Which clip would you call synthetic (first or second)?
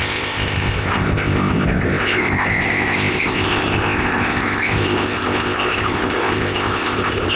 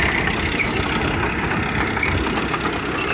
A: first